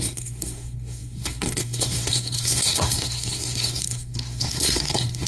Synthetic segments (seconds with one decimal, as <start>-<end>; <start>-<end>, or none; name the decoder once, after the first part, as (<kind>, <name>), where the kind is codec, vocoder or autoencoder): 0.0-5.3 (codec, SNAC)